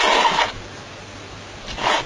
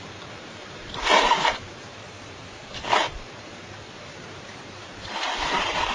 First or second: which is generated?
second